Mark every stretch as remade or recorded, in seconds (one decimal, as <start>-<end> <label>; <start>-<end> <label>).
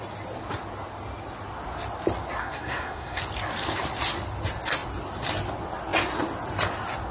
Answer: 0.0-2.4 recorded; 2.4-3.2 remade; 3.2-7.1 recorded